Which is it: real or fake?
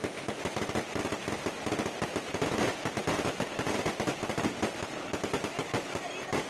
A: real